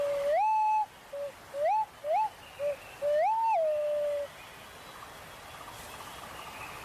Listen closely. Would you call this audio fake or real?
real